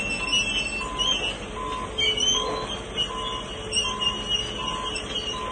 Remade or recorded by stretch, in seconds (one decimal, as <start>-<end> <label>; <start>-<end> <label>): 0.0-5.5 recorded